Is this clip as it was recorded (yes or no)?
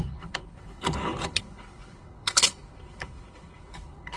no